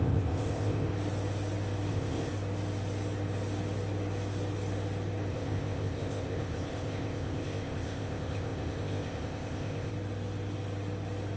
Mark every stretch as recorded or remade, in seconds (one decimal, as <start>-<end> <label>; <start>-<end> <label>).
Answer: 0.0-0.9 remade; 0.9-1.9 recorded; 1.9-2.3 remade; 2.3-5.3 recorded; 5.3-9.9 remade; 9.9-11.4 recorded